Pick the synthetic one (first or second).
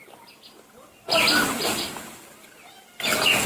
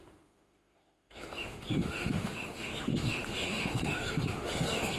second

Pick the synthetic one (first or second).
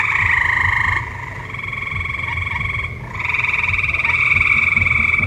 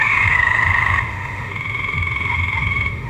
second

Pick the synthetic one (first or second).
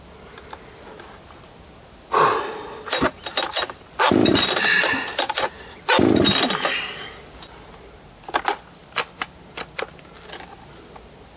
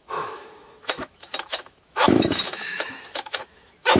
second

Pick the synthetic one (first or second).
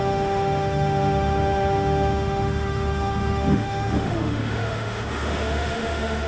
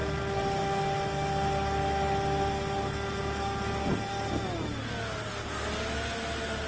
first